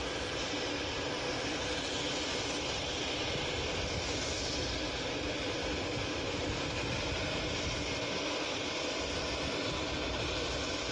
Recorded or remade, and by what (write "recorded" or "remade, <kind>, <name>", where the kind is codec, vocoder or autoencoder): recorded